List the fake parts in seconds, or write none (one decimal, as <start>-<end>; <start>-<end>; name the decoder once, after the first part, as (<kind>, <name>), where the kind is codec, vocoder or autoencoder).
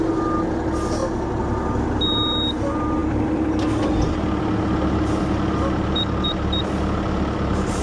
none